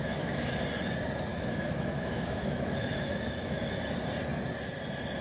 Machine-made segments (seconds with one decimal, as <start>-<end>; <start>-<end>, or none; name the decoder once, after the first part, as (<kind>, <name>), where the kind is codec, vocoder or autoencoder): 0.0-0.6 (autoencoder, DAC-VAE); 1.3-3.6